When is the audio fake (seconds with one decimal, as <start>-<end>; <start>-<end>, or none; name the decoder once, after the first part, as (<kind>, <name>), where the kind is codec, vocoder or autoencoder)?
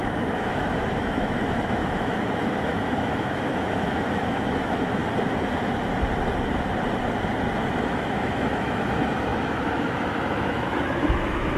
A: 0.0-5.0 (autoencoder, DAC-VAE); 7.8-11.6